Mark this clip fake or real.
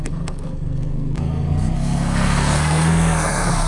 fake